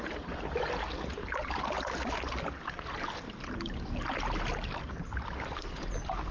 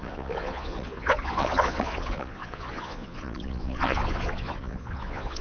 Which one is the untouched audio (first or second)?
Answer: first